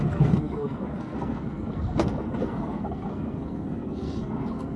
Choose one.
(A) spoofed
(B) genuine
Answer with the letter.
A